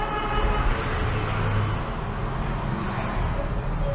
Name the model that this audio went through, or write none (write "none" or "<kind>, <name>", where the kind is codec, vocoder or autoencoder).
none